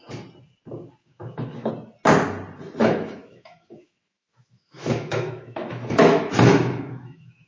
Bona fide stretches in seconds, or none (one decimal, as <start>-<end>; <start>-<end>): 0.0-1.0; 1.7-2.8